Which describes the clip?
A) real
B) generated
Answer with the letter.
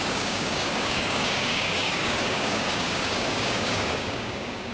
B